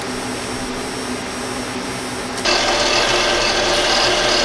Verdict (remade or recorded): recorded